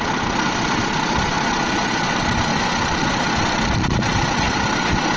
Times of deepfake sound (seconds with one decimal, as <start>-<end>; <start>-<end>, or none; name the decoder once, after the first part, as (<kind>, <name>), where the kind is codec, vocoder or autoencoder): 0.0-5.2 (vocoder, Vocos)